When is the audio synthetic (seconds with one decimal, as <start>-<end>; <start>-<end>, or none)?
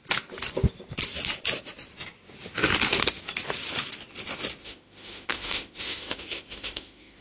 4.6-7.2